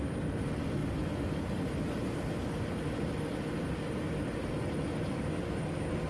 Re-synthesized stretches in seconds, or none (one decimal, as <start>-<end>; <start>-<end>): none

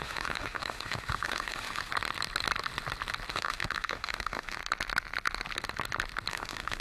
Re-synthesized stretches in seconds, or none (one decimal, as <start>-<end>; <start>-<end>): 0.0-1.9; 3.3-4.6; 6.3-6.8

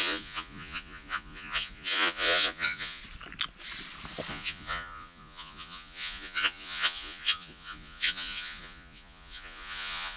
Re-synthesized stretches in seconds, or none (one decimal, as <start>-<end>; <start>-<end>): 0.0-3.0; 4.3-10.2

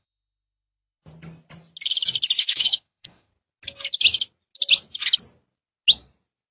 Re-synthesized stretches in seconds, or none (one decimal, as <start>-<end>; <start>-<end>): 0.0-1.0; 2.4-3.3

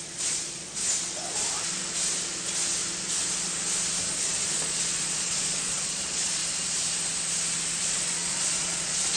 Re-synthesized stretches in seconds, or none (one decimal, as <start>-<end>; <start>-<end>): 0.0-0.8; 4.1-6.4; 7.8-9.2